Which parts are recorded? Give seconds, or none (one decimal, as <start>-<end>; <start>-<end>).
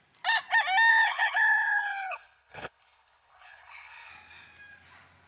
0.0-0.9; 4.1-5.3